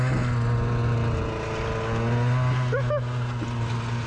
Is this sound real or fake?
real